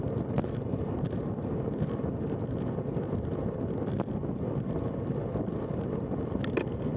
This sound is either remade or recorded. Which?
recorded